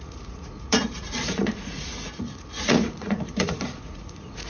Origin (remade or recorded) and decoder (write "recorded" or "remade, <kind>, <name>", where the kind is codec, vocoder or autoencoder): remade, vocoder, Vocos